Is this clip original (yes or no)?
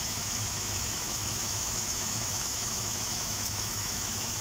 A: no